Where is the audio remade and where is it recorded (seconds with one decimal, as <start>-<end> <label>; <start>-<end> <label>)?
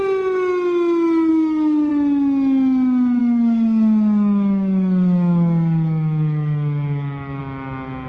0.0-1.3 recorded; 1.3-1.9 remade; 1.9-3.2 recorded; 3.2-7.4 remade; 7.4-8.1 recorded